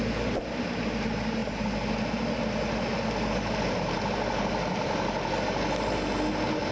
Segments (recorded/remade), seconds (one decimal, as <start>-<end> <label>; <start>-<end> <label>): 0.0-6.7 recorded